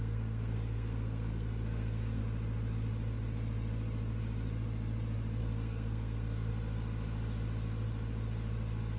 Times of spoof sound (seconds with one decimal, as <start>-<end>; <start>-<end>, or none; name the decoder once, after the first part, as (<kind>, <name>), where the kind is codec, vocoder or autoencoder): 0.0-2.2 (codec, SNAC); 5.4-6.5